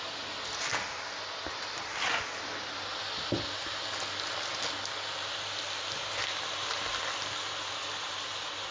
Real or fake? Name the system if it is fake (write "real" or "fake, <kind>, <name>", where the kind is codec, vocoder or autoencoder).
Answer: real